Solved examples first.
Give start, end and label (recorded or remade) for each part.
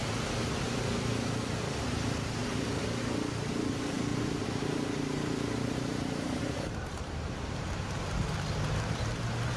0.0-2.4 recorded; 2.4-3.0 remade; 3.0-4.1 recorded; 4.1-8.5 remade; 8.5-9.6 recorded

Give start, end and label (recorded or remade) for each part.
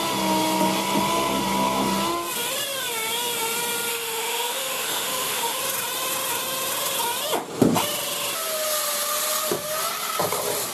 0.0-3.9 recorded; 3.9-5.6 remade; 5.6-10.7 recorded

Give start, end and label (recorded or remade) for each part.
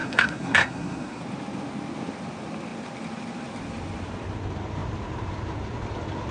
0.0-1.2 remade; 1.2-6.3 recorded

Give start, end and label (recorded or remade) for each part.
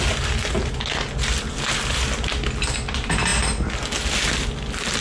0.0-5.0 recorded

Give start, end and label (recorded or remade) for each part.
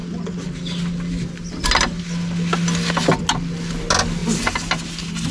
0.0-5.3 recorded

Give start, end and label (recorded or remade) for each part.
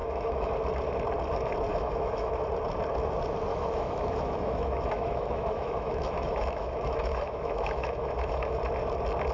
0.0-0.5 remade; 0.5-1.7 recorded; 1.7-2.4 remade; 2.4-3.5 recorded; 3.5-8.6 remade; 8.6-9.3 recorded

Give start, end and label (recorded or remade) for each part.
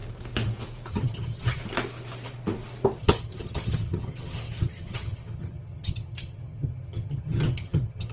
0.0-0.9 recorded; 0.9-1.6 remade; 1.6-3.0 recorded; 3.0-8.1 remade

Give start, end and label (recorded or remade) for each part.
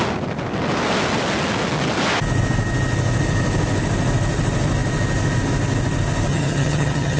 0.0-6.3 recorded; 6.3-7.2 remade